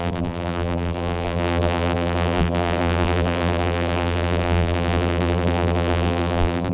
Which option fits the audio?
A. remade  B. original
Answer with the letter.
A